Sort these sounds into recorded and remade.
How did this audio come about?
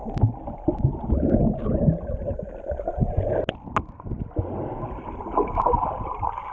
recorded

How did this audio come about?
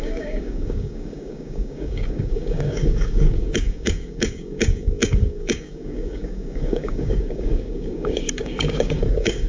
remade